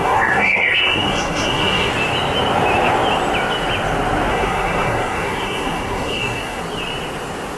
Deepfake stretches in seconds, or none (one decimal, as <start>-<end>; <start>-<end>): 0.0-1.9; 4.3-6.6